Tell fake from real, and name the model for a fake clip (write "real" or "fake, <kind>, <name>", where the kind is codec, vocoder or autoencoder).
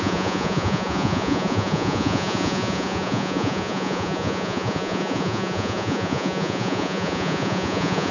fake, vocoder, Vocos